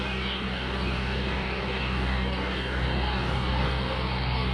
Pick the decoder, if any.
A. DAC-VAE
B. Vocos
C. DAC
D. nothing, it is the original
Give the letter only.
C